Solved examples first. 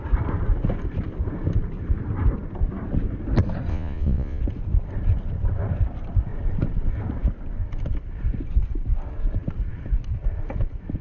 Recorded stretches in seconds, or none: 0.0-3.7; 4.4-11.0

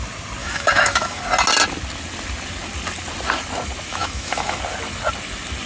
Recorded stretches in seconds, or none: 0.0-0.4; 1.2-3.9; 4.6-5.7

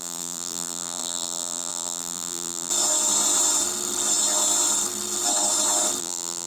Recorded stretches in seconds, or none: 2.7-6.0